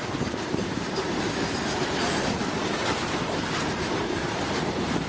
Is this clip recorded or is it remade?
remade